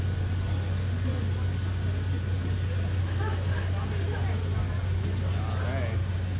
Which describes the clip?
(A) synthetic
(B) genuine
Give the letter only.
B